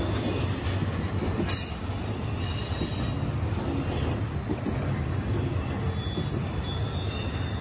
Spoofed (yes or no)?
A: no